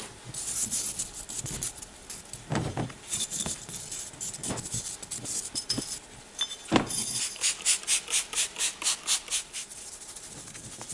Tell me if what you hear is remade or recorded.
recorded